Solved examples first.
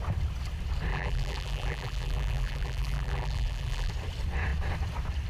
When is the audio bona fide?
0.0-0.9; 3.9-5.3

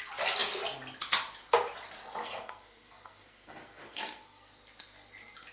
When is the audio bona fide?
0.0-2.2; 4.5-5.5

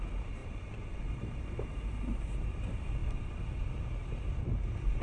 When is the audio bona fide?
0.0-0.4; 2.5-5.0

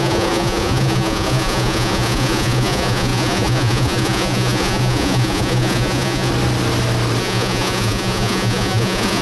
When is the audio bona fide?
6.3-7.2

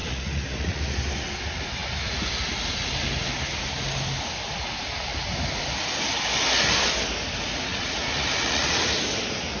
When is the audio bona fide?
0.8-7.7; 8.8-9.6